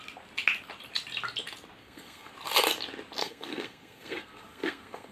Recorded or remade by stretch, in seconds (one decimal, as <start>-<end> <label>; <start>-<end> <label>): 0.0-1.8 recorded; 1.8-2.3 remade; 2.3-3.2 recorded; 3.2-5.1 remade